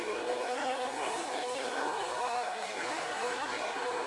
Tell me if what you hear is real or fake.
fake